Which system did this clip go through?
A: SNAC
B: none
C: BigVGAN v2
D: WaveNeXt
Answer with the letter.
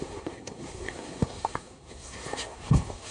A